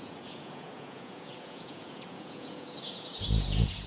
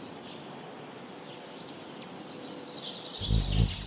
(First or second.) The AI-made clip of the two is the first